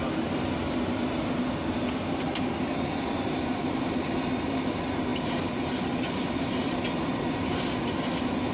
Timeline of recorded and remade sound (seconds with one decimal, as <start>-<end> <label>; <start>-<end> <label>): 0.0-8.5 recorded